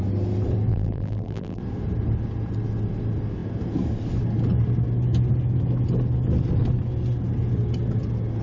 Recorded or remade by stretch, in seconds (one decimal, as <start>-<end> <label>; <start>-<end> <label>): 0.0-0.7 recorded; 0.7-1.6 remade; 1.6-8.4 recorded